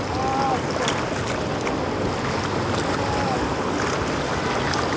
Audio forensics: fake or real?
real